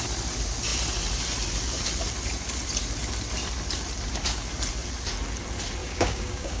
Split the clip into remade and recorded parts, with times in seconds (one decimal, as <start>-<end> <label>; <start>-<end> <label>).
0.0-5.8 recorded; 5.8-6.6 remade